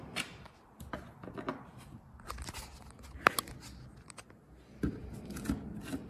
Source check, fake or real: real